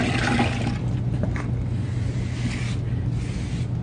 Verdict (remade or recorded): recorded